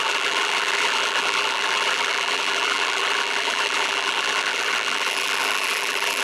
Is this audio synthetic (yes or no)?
yes